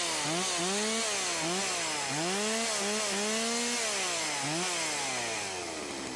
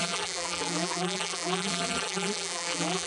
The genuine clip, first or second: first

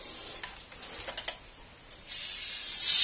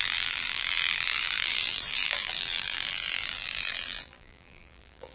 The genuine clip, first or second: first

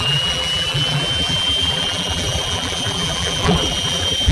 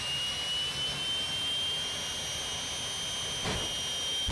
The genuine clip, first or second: second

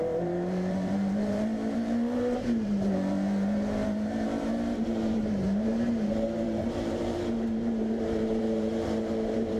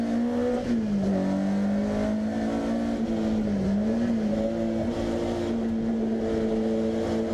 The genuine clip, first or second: second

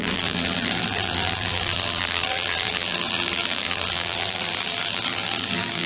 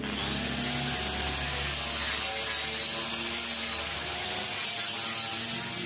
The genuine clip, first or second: second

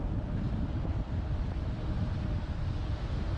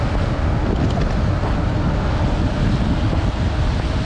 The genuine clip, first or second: second